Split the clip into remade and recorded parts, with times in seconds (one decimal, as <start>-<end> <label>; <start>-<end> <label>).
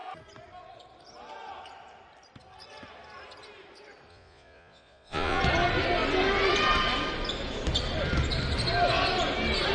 0.0-4.1 recorded; 4.1-5.4 remade; 5.4-9.7 recorded